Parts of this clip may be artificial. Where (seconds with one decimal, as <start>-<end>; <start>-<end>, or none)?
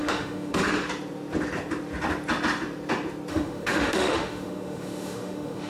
0.0-0.6; 3.3-5.7